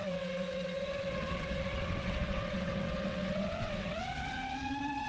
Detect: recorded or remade remade